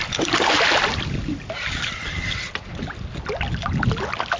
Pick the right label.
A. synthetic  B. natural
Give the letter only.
B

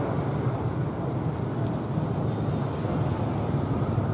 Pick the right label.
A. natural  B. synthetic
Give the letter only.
A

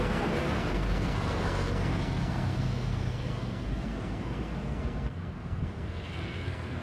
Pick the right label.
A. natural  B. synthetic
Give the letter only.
B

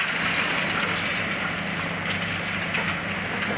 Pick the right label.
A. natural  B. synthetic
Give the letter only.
A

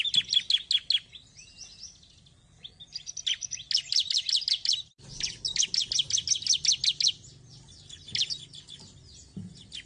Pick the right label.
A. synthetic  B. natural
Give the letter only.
B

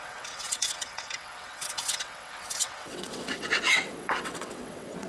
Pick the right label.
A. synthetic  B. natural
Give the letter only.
A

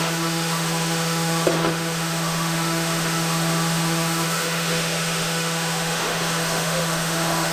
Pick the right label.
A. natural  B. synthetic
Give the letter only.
B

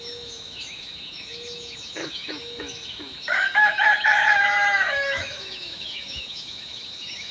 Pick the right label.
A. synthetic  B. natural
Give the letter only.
A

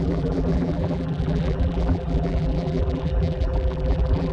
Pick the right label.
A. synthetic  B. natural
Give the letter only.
A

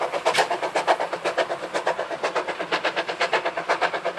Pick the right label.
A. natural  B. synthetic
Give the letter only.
A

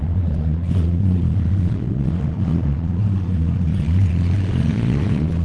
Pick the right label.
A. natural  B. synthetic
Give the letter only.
B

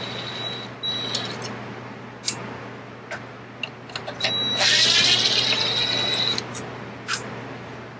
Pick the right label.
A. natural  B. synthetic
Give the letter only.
A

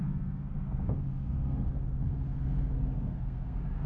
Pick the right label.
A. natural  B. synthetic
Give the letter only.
B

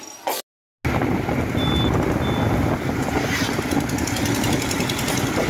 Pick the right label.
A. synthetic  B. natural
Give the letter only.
B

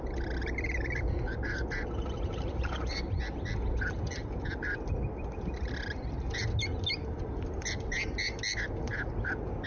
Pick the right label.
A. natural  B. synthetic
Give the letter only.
A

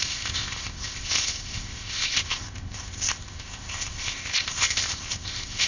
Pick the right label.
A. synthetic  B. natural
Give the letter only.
A